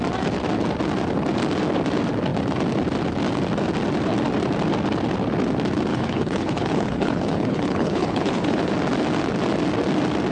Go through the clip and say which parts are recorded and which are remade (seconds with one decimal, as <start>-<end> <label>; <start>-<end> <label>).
0.0-5.9 recorded; 5.9-8.7 remade; 8.7-10.3 recorded

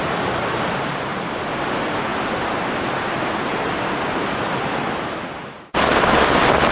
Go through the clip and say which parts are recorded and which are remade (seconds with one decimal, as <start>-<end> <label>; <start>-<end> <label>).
0.0-6.7 remade

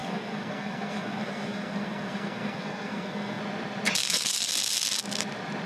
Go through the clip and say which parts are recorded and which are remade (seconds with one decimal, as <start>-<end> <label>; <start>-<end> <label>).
0.0-3.4 remade; 3.4-4.0 recorded; 4.0-4.5 remade; 4.5-5.7 recorded

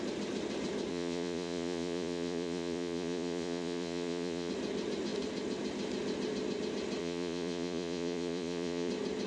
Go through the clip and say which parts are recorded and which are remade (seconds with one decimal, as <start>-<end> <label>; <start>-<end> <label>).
0.0-0.9 recorded; 0.9-4.5 remade; 4.5-7.0 recorded; 7.0-8.9 remade; 8.9-9.3 recorded

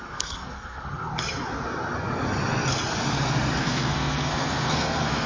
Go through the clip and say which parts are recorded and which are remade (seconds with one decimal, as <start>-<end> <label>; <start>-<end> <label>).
0.0-1.1 remade; 1.1-3.6 recorded; 3.6-5.3 remade

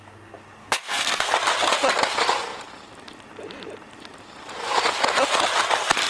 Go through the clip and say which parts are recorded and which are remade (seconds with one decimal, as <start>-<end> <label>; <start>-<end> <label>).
0.0-0.6 recorded; 0.6-1.3 remade; 1.3-6.1 recorded

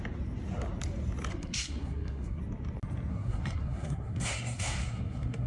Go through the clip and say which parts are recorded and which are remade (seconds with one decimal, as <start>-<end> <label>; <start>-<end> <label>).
0.0-1.3 recorded; 1.3-2.4 remade; 2.4-3.1 recorded; 3.1-5.5 remade

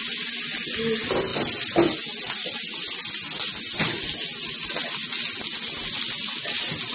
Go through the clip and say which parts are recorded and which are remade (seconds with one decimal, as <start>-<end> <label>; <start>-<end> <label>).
0.0-6.9 recorded